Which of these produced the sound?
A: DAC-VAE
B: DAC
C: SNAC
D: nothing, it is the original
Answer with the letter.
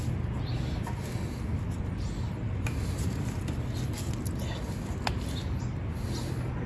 D